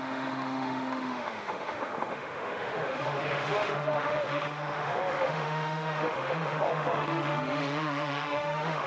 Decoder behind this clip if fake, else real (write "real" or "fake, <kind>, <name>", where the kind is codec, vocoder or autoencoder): fake, autoencoder, DAC-VAE